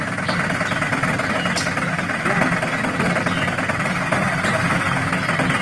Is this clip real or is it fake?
real